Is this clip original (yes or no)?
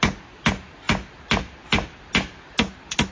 yes